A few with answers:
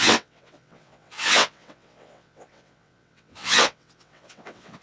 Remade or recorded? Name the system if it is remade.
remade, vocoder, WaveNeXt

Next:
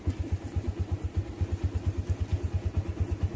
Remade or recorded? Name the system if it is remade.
recorded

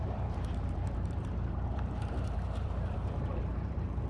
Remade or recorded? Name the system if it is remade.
remade, vocoder, BigVGAN v2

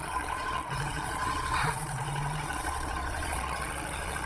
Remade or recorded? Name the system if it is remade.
remade, vocoder, Vocos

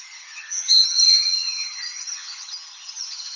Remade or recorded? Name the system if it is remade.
remade, vocoder, HiFi-GAN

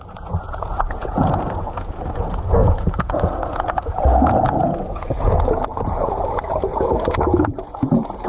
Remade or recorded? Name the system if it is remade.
remade, vocoder, Vocos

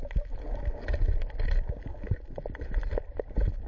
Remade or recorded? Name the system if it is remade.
recorded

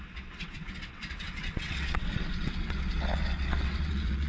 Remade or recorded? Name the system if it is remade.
remade, vocoder, WaveNeXt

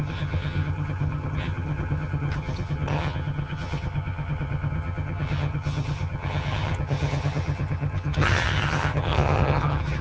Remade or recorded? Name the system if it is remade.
remade, vocoder, HiFi-GAN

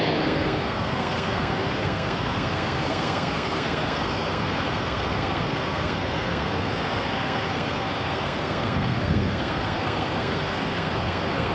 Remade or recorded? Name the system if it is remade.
remade, codec, SNAC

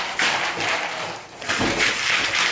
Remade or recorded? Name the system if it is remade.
recorded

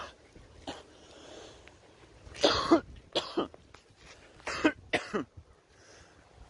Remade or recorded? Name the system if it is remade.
recorded